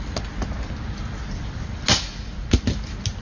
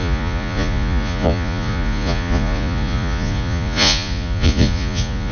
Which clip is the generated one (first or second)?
second